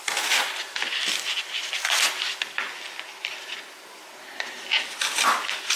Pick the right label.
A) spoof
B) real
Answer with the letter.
A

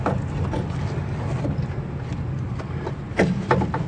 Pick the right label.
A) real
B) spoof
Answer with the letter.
A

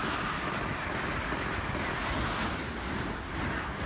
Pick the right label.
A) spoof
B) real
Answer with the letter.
B